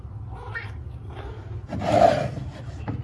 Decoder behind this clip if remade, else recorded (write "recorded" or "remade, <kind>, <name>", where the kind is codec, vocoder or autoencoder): recorded